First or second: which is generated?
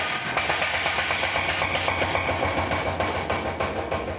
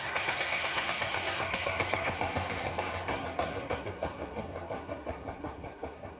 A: second